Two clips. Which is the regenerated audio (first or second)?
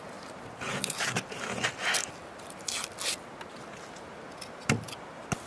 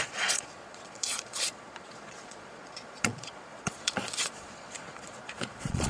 second